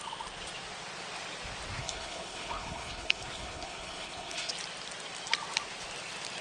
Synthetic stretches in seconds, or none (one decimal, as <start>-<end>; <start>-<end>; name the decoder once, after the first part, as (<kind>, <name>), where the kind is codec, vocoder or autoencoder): 1.8-4.5 (codec, HILCodec)